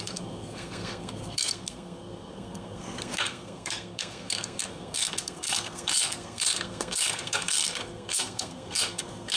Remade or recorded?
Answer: remade